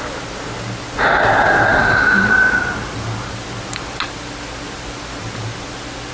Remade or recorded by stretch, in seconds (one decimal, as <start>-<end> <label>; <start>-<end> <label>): 0.0-6.1 recorded

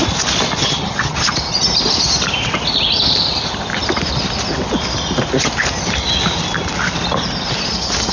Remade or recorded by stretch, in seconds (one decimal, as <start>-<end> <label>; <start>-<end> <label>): 0.0-0.6 recorded; 0.6-1.3 remade; 1.3-8.1 recorded